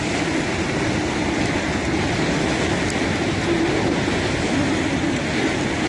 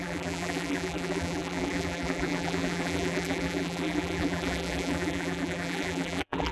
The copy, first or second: second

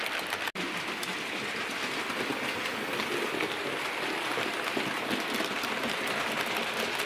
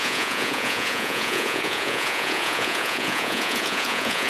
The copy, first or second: second